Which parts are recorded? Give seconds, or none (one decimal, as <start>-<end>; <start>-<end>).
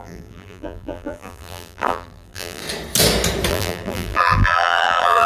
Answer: 2.6-3.5